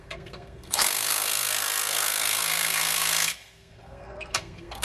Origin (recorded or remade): remade